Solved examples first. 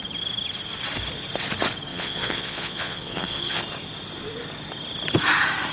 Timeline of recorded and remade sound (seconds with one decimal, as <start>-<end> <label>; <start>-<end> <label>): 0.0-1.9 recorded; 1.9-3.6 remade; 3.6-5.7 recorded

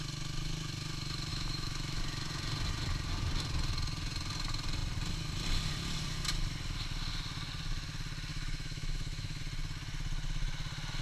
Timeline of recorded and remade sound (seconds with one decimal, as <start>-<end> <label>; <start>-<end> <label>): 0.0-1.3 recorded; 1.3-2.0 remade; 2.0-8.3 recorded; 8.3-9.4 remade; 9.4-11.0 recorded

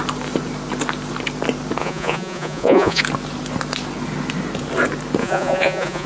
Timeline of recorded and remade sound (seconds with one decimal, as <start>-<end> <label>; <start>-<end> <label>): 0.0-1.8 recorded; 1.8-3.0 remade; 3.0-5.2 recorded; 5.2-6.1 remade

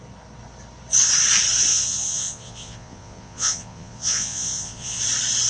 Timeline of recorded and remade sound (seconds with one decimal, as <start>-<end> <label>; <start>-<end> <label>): 0.0-1.7 recorded; 1.7-5.0 remade; 5.0-5.5 recorded